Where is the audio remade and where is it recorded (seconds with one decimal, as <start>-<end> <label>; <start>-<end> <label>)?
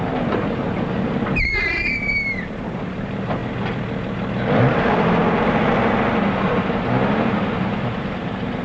0.0-3.4 remade; 3.4-4.7 recorded; 4.7-5.2 remade; 5.2-6.1 recorded; 6.1-8.6 remade